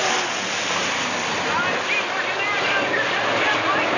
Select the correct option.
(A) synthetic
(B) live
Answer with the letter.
B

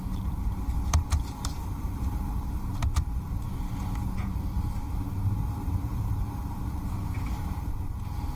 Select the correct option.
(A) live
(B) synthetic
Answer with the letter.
B